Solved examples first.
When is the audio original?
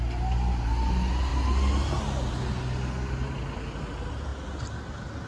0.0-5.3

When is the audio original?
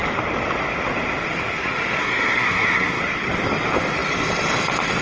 0.0-2.0; 3.0-5.0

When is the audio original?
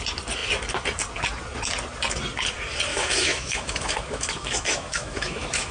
0.0-2.9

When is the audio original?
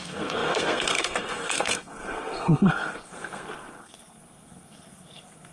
none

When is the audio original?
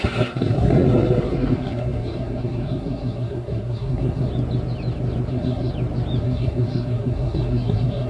4.3-5.3; 5.7-6.2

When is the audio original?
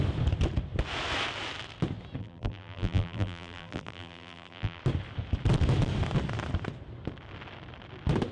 0.0-2.2; 4.8-8.3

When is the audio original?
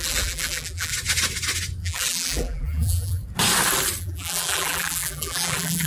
0.9-1.8; 3.2-4.0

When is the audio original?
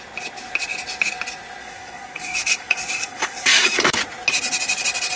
0.0-1.6; 4.0-5.2